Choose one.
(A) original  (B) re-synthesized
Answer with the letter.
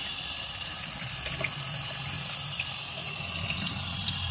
A